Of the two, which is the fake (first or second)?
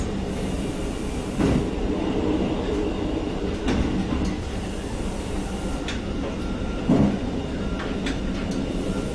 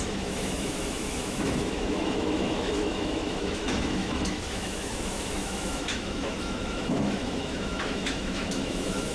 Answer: second